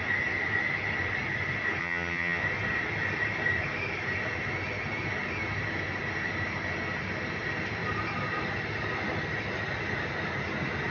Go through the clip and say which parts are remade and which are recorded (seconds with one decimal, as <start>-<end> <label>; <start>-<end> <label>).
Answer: 0.0-1.8 recorded; 1.8-2.4 remade; 2.4-10.9 recorded